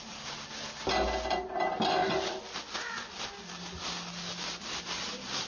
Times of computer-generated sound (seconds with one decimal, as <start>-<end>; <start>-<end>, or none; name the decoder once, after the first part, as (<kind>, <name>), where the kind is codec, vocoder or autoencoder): none

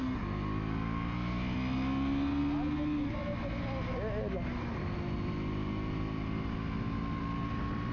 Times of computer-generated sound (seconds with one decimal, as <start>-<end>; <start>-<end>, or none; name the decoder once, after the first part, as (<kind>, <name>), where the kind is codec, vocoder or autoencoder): none

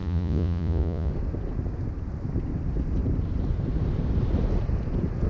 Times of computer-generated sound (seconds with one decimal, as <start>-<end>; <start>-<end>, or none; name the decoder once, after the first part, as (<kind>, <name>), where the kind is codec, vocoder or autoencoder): 0.0-1.1 (vocoder, Vocos)

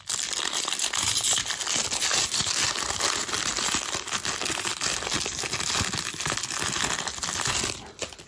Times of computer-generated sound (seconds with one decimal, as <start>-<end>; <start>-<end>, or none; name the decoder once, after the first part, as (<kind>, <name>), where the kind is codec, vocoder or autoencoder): none

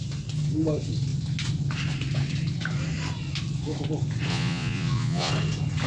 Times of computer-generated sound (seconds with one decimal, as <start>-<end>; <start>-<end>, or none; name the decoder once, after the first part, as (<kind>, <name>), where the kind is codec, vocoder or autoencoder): 4.3-5.3 (vocoder, Vocos)

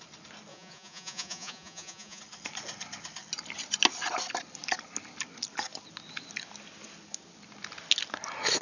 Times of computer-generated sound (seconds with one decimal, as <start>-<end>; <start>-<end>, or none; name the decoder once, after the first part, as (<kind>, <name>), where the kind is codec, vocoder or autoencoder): 0.5-2.2 (vocoder, Vocos)